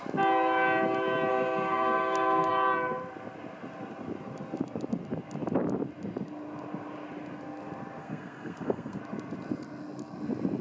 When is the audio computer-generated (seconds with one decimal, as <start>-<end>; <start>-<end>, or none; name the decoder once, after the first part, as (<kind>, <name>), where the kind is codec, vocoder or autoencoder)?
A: 1.3-2.5 (codec, SNAC); 8.0-9.0